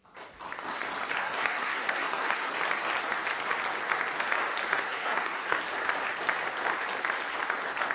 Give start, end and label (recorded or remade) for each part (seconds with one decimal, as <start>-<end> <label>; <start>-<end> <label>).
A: 0.0-1.2 recorded; 1.2-2.5 remade; 2.5-4.7 recorded; 4.7-5.6 remade; 5.6-7.9 recorded